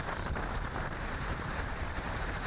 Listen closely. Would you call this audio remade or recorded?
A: remade